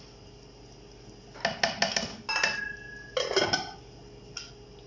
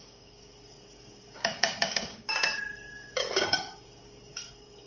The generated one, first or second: second